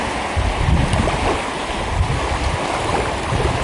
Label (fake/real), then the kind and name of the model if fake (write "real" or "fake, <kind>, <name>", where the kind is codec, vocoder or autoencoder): real